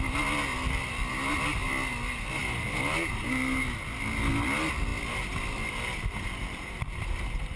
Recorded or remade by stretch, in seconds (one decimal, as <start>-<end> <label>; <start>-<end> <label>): 0.0-0.5 recorded; 0.5-1.1 remade; 1.1-2.4 recorded; 2.4-4.3 remade; 4.3-4.9 recorded; 4.9-7.1 remade; 7.1-7.6 recorded